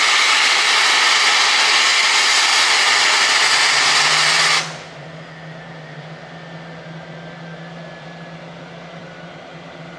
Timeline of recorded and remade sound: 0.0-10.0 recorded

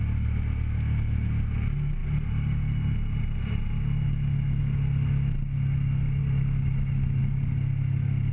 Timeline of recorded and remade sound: 0.0-8.3 recorded

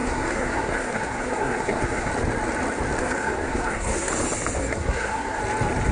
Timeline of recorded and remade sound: 0.0-2.1 remade; 2.1-3.0 recorded; 3.0-4.1 remade; 4.1-4.6 recorded; 4.6-5.4 remade; 5.4-5.9 recorded